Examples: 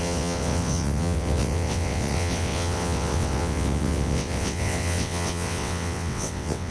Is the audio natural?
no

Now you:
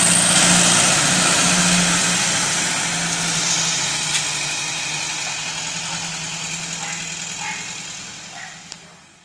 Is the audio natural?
yes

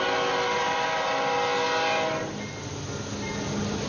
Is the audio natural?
yes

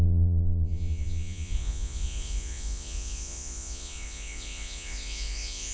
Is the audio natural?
no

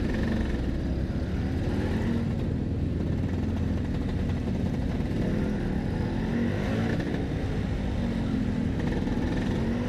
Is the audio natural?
yes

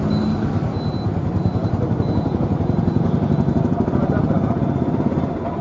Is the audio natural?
yes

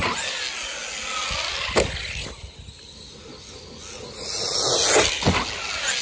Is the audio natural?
yes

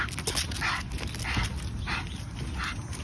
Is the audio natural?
yes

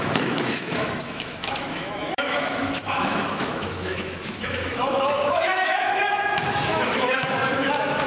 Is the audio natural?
no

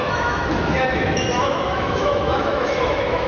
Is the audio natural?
no